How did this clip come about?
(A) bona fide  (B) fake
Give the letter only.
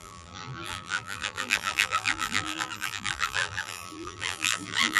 B